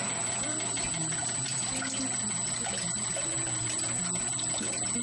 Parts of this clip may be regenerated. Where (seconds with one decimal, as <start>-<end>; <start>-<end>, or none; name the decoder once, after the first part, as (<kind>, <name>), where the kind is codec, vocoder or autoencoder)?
none

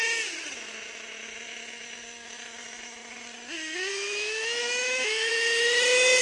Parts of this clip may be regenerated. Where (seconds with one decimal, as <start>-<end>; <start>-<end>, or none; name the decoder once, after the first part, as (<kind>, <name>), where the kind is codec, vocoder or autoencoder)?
2.6-3.0 (autoencoder, DAC-VAE); 3.9-5.3

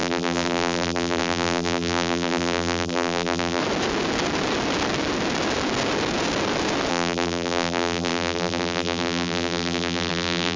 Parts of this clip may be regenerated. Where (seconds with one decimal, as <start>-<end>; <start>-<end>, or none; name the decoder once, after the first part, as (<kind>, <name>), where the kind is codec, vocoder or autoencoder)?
0.0-3.6 (vocoder, BigVGAN v2); 6.9-10.6

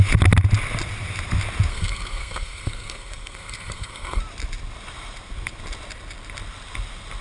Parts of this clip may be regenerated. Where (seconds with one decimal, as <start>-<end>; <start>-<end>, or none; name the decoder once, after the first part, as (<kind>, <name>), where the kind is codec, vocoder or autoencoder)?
1.7-4.2 (codec, SNAC)